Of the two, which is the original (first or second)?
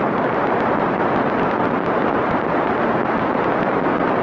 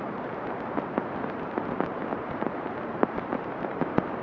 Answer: first